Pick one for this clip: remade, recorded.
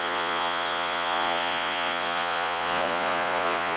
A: remade